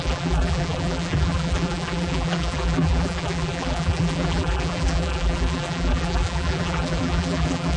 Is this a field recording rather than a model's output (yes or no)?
no